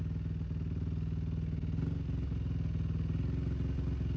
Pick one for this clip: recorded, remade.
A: recorded